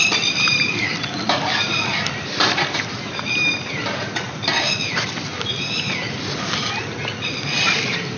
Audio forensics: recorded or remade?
remade